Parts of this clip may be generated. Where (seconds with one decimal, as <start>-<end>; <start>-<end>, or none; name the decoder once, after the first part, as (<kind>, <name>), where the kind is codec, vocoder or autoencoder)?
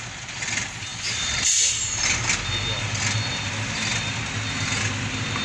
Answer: none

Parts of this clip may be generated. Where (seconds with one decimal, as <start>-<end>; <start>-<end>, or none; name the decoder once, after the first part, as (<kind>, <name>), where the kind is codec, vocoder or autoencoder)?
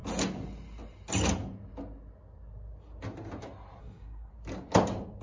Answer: 3.8-4.3 (codec, SNAC)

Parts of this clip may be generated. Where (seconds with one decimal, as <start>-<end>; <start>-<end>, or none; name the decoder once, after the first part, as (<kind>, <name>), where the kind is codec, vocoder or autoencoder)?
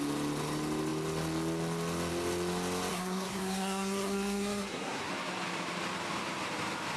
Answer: 2.9-5.1 (codec, SNAC)